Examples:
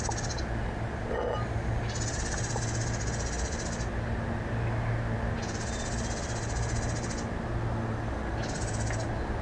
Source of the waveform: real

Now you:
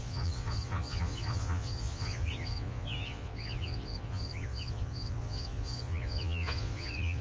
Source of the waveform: fake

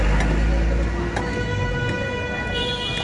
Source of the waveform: real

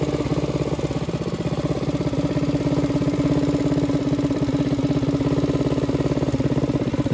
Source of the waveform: real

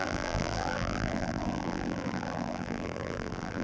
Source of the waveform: fake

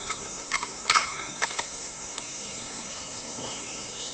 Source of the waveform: fake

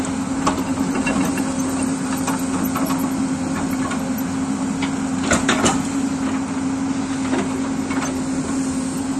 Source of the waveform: real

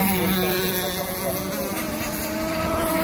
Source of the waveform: real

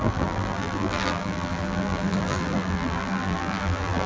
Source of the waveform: fake